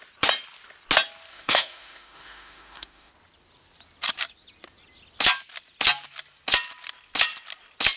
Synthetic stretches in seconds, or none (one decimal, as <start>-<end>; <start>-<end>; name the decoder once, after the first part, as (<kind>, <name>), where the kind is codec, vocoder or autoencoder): 1.3-3.1 (autoencoder, DAC-VAE)